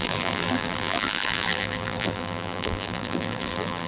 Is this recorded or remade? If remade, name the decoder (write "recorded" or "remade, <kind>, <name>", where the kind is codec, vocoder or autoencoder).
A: remade, vocoder, BigVGAN v2